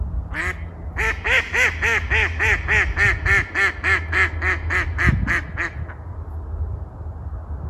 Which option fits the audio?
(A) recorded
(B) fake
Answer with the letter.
A